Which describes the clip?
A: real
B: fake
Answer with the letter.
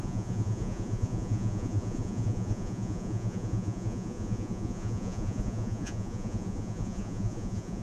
B